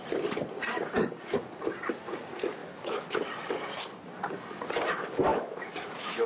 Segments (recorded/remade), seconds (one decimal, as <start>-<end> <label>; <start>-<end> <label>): 0.0-2.6 recorded; 2.6-3.2 remade; 3.2-5.3 recorded; 5.3-6.3 remade